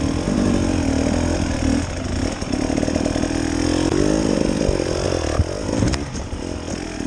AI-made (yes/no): no